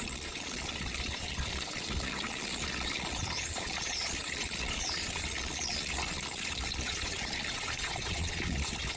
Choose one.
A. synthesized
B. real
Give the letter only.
A